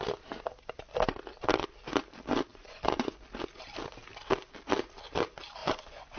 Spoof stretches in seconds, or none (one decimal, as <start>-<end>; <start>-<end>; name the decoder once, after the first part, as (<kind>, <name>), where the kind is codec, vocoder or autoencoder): 2.5-3.2 (vocoder, Vocos); 5.6-6.2